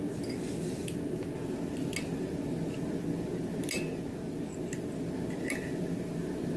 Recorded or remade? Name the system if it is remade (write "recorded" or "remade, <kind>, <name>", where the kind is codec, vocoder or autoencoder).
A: recorded